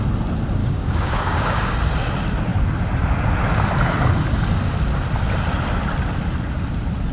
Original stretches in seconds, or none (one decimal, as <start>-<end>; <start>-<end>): 0.0-0.6; 1.7-7.1